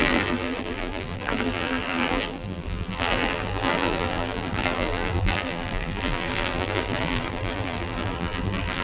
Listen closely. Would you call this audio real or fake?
fake